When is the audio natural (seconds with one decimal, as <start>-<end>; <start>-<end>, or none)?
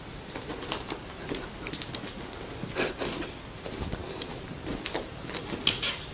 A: 0.0-6.1